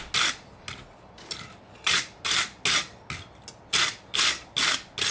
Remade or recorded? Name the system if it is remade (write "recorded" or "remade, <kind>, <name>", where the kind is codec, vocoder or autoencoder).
recorded